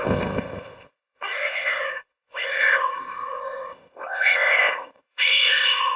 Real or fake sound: fake